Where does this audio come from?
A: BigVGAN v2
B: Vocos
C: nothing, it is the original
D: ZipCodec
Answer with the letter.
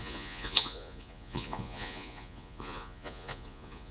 B